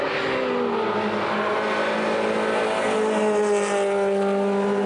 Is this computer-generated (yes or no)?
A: no